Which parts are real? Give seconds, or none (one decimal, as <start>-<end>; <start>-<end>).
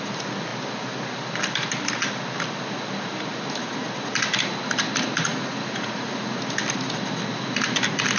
0.0-5.3; 6.4-8.2